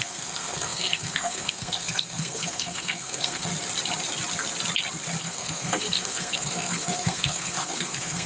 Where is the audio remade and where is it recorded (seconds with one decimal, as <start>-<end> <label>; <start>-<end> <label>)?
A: 0.0-3.5 remade; 3.5-5.2 recorded; 5.2-8.3 remade